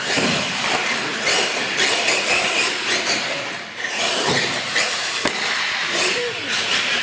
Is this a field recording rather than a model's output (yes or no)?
no